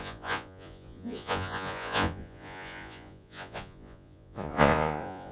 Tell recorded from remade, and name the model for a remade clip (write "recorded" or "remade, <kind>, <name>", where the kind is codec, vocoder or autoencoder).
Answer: remade, vocoder, Vocos